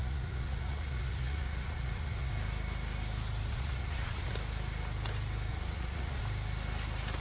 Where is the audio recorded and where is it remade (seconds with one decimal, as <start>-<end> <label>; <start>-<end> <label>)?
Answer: 0.0-2.3 remade; 2.3-3.5 recorded; 3.5-4.3 remade; 4.3-5.5 recorded; 5.5-6.2 remade; 6.2-7.2 recorded